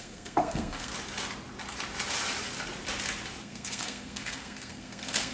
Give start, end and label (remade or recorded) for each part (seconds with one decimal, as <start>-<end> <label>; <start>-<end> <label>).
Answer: 0.0-0.9 remade; 0.9-3.4 recorded; 3.4-5.3 remade

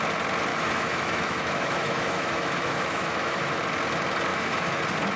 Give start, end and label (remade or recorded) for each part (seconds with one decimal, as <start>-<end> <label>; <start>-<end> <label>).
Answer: 0.0-0.5 recorded; 0.5-3.6 remade; 3.6-4.3 recorded; 4.3-4.8 remade; 4.8-5.2 recorded

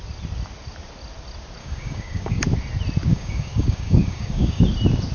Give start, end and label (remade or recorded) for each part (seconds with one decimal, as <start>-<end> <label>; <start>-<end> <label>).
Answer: 0.0-1.6 recorded; 1.6-2.4 remade; 2.4-3.1 recorded; 3.1-4.6 remade; 4.6-5.1 recorded

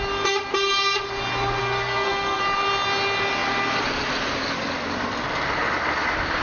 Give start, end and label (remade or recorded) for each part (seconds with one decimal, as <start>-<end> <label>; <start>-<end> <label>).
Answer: 0.0-1.6 recorded; 1.6-2.4 remade; 2.4-6.4 recorded

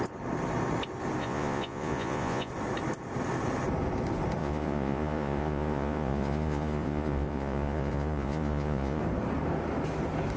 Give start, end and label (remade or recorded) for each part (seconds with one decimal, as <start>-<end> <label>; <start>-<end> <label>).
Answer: 0.0-1.2 recorded; 1.2-2.5 remade; 2.5-4.4 recorded; 4.4-9.0 remade; 9.0-10.4 recorded

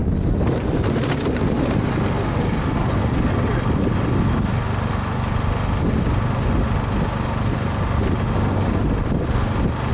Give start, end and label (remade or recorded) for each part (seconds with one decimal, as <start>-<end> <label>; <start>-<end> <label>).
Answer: 0.0-9.9 recorded

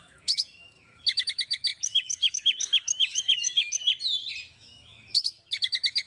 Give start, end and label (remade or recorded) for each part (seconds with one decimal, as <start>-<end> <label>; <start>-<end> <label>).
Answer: 0.0-3.8 remade; 3.8-4.5 recorded; 4.5-6.1 remade

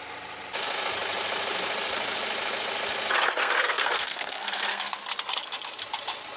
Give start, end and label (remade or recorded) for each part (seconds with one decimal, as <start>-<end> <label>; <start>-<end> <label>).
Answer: 0.0-3.4 recorded; 3.4-5.0 remade; 5.0-6.4 recorded